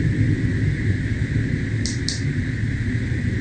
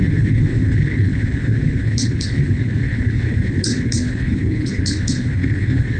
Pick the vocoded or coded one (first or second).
second